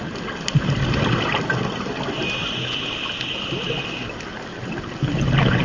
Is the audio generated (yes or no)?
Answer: no